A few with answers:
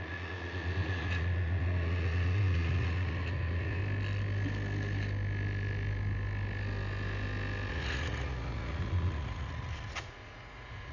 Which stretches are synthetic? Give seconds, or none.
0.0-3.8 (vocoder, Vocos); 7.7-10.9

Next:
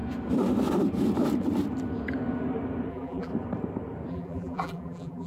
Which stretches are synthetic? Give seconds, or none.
2.9-3.3 (vocoder, BigVGAN v2); 4.1-5.3